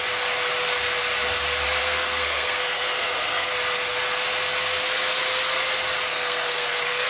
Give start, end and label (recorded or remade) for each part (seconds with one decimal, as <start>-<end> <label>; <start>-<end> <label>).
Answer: 0.0-1.8 recorded; 1.8-3.5 remade; 3.5-6.1 recorded; 6.1-7.1 remade